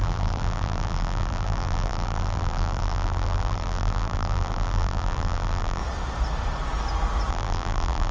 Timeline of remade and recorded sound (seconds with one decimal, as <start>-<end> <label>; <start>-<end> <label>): 0.0-5.8 remade; 5.8-7.3 recorded; 7.3-8.1 remade